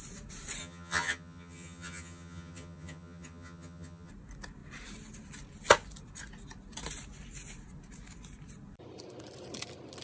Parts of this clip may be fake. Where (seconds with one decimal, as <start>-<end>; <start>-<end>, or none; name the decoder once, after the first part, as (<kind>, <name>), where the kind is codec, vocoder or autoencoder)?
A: 0.6-4.1 (vocoder, HiFi-GAN)